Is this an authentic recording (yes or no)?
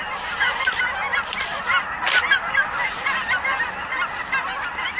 yes